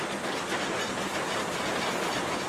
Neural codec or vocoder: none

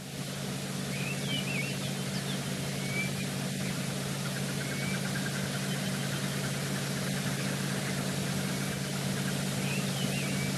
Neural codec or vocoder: none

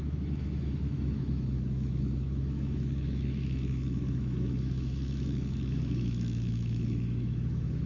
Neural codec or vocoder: autoencoder, DAC-VAE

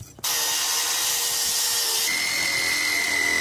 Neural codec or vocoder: none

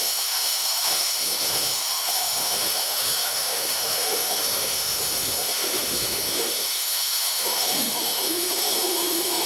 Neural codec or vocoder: autoencoder, DAC-VAE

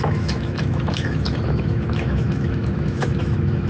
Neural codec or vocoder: autoencoder, DAC-VAE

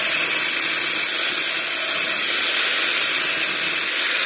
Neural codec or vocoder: none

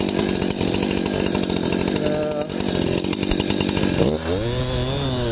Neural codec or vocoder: none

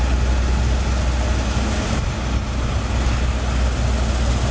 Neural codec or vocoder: none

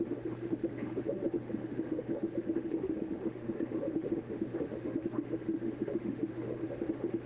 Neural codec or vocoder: autoencoder, DAC-VAE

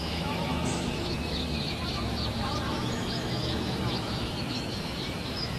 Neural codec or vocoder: autoencoder, DAC-VAE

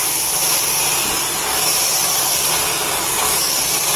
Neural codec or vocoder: none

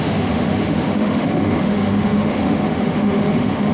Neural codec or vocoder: autoencoder, DAC-VAE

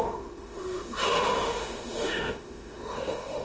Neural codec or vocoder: autoencoder, DAC-VAE